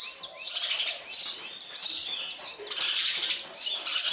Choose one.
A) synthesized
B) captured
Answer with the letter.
B